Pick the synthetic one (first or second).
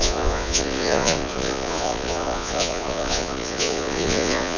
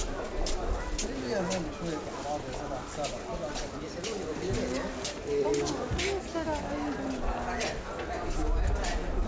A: first